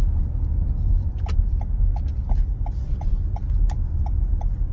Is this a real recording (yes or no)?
yes